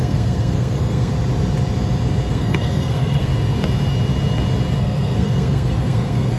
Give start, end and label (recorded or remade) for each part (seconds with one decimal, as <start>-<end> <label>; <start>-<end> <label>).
0.0-1.1 remade; 1.1-2.3 recorded; 2.3-3.3 remade; 3.3-4.8 recorded; 4.8-6.4 remade